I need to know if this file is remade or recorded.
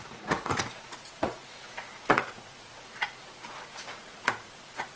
remade